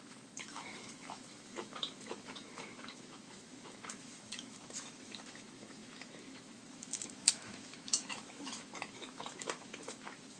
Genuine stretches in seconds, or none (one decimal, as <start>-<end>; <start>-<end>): none